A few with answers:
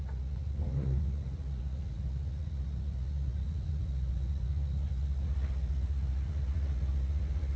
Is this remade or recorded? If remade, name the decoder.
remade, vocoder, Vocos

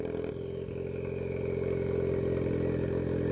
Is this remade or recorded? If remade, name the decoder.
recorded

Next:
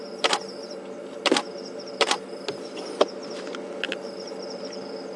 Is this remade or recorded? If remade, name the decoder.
recorded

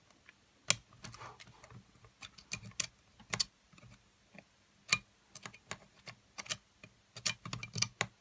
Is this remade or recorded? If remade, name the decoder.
recorded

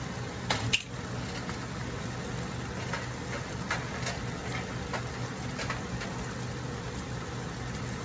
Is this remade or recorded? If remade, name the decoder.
recorded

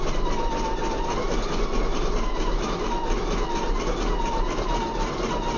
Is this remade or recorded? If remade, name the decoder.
recorded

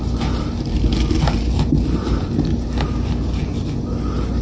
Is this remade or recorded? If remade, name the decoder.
recorded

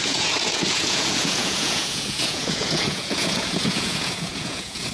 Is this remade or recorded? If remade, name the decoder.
remade, vocoder, Vocos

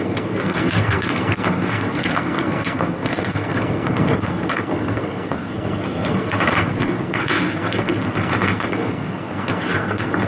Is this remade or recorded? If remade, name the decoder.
remade, codec, SNAC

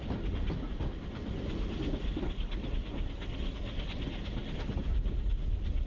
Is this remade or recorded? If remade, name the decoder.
recorded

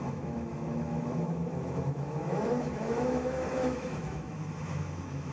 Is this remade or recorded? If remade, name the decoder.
remade, autoencoder, DAC-VAE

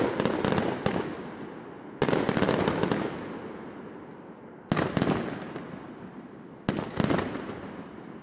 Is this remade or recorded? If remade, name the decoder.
recorded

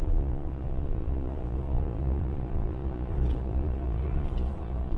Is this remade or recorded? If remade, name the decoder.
remade, vocoder, Vocos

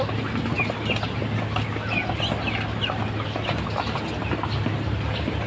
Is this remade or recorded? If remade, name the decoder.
recorded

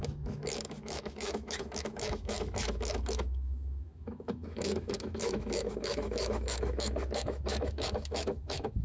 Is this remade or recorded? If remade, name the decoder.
remade, autoencoder, DAC-VAE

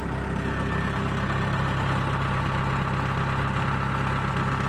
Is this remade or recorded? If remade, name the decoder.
recorded